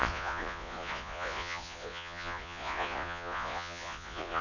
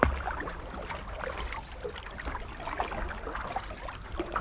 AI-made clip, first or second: first